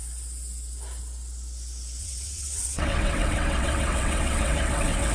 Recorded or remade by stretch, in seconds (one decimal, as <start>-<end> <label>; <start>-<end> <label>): 0.0-2.0 recorded; 2.0-5.1 remade